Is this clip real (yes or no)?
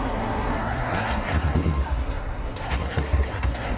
no